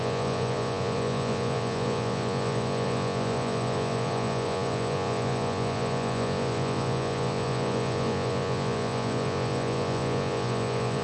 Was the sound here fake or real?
fake